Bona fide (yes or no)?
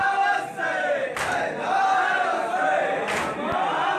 no